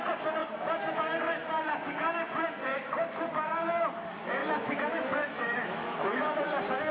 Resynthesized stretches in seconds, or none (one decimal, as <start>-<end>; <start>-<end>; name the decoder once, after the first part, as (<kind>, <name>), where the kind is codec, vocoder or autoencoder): 4.4-6.4 (autoencoder, DAC-VAE)